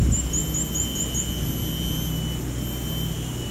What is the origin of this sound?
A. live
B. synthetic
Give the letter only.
A